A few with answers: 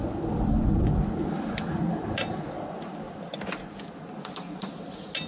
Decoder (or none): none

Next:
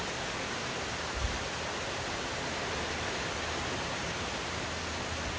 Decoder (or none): none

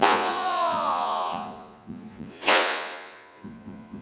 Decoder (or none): vocoder, Vocos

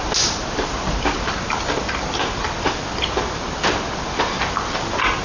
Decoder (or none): none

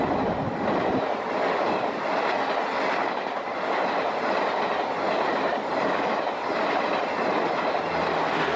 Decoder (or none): none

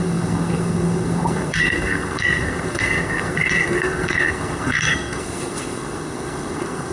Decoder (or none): codec, SNAC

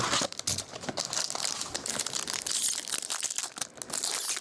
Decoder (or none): none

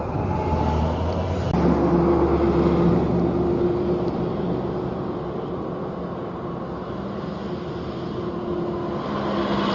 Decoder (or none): none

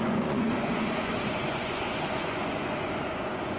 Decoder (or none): vocoder, Vocos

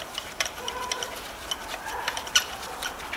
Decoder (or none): vocoder, BigVGAN v2